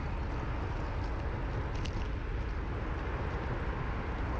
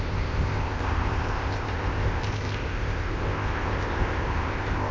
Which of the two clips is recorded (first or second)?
first